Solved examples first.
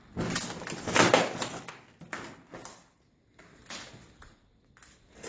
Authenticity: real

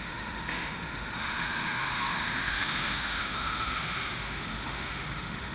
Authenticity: fake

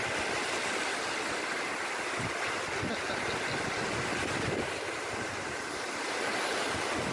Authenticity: real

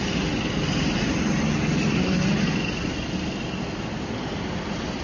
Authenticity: real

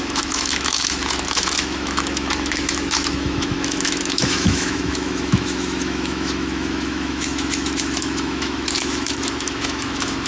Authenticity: fake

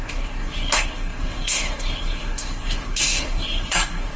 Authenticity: fake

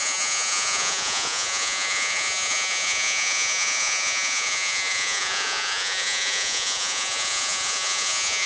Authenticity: fake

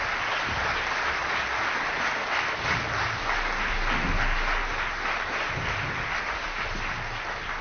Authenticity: real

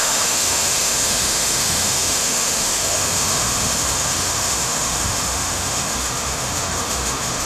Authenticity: fake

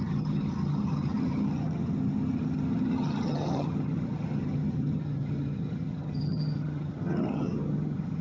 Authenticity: fake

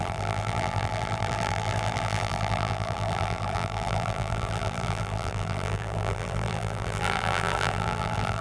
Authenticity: fake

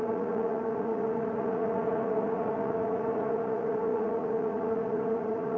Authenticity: fake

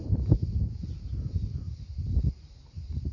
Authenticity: fake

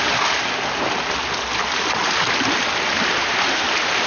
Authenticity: real